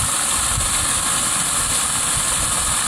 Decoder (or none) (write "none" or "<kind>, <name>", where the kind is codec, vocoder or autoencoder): none